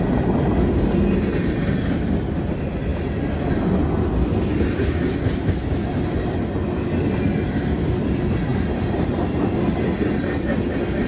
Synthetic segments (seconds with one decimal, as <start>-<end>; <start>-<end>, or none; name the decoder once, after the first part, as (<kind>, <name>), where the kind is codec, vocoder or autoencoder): none